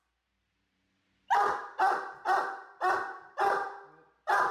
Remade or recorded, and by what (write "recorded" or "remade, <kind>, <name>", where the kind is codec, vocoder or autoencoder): recorded